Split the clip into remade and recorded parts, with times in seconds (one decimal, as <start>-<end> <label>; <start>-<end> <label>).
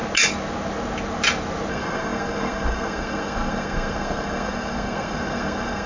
0.0-1.7 recorded; 1.7-5.9 remade